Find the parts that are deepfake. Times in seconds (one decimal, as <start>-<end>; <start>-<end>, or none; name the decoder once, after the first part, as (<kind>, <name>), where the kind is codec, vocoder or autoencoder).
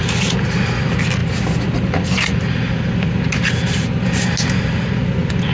none